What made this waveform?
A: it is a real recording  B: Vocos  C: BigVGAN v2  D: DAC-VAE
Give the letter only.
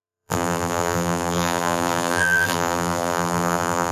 C